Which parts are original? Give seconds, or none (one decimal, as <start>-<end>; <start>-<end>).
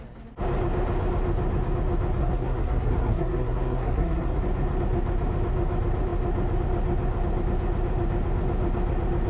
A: 0.0-2.2; 4.4-9.3